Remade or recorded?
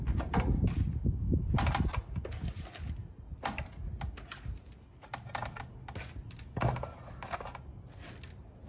recorded